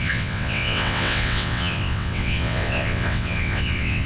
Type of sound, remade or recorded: remade